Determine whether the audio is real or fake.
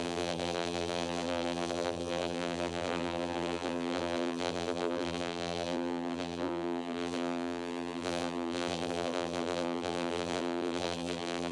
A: fake